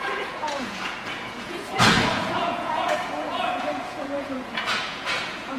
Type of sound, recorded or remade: remade